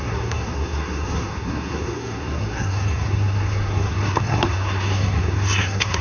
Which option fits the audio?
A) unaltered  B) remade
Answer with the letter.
B